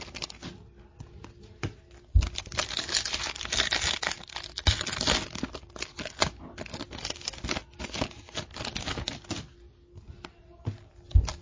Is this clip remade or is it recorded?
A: recorded